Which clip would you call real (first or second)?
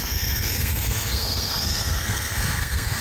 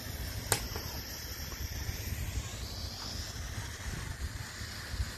second